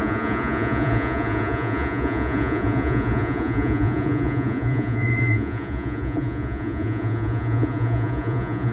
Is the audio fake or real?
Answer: fake